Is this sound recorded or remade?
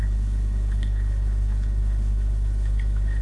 remade